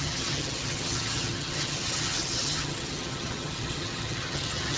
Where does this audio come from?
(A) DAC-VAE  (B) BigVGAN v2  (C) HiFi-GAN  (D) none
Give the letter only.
C